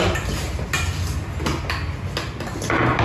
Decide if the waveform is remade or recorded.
recorded